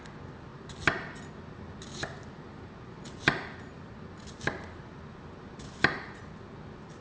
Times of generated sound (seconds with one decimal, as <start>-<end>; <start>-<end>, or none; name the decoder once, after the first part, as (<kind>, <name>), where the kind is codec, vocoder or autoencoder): none